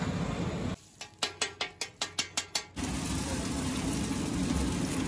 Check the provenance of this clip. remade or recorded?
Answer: recorded